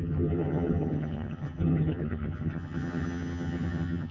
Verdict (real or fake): fake